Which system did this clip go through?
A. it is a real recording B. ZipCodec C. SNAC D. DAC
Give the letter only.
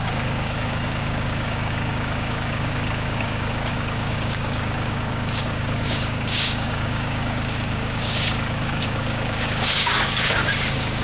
D